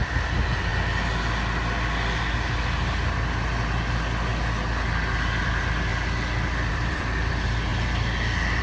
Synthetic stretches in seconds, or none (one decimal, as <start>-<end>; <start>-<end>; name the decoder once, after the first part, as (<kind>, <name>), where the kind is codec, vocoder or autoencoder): 0.0-0.7 (vocoder, BigVGAN v2); 5.4-5.9; 6.7-7.7